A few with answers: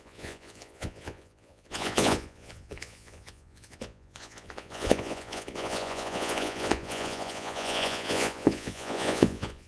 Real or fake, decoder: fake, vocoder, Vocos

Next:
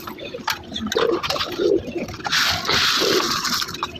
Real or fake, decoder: real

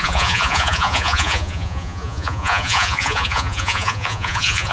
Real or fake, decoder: fake, vocoder, Vocos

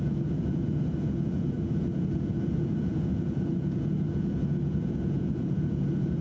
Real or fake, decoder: fake, vocoder, Vocos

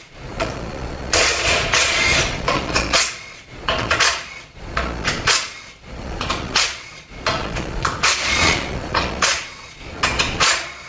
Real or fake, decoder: fake, vocoder, Vocos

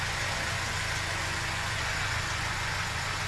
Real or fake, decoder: fake, vocoder, Vocos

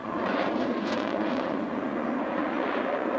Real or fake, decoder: fake, vocoder, Vocos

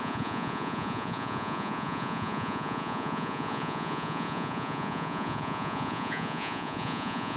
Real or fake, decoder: fake, vocoder, Vocos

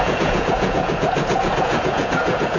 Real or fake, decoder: fake, vocoder, Vocos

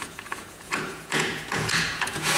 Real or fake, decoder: fake, vocoder, Vocos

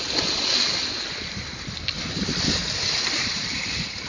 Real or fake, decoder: real